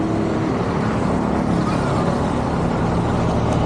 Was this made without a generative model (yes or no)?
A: yes